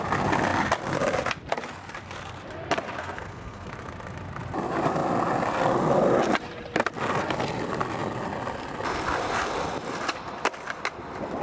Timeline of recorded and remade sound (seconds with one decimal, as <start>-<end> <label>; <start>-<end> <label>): 0.0-3.0 recorded; 3.0-3.7 remade; 3.7-11.4 recorded